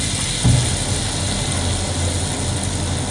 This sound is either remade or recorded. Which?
recorded